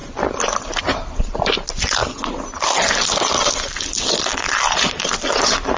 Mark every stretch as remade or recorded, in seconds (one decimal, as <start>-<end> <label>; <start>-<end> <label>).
0.0-0.8 recorded; 0.8-2.0 remade; 2.0-4.6 recorded; 4.6-5.8 remade